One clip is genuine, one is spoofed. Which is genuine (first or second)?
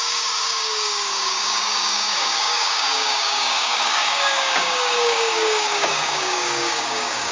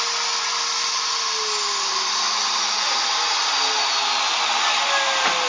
second